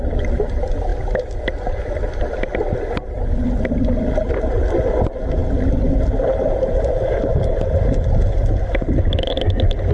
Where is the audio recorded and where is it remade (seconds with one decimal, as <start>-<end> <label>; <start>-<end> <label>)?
0.0-9.9 recorded